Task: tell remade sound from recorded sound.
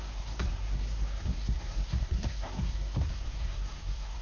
remade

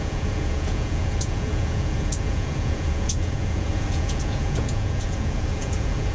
remade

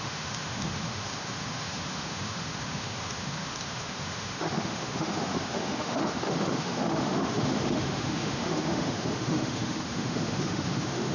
remade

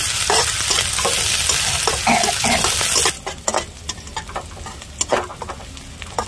recorded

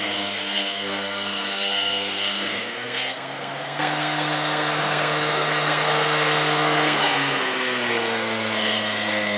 remade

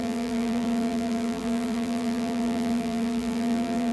remade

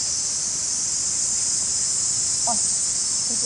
recorded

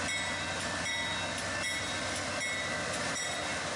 recorded